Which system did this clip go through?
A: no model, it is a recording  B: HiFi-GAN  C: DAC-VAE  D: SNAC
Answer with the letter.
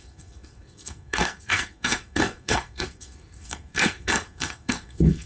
D